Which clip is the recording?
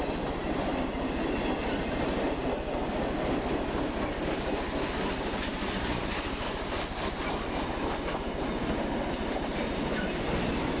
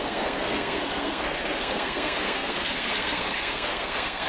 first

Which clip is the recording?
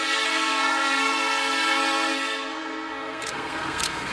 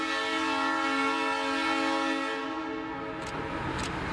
second